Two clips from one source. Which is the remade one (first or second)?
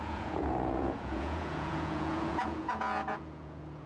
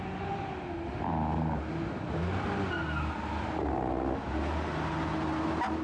first